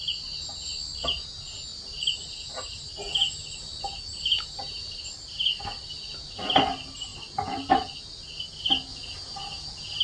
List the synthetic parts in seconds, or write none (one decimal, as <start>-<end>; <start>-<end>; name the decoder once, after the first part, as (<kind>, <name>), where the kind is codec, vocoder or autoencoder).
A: none